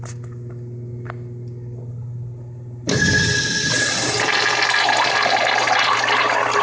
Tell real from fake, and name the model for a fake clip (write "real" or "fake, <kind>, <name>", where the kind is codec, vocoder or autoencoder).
real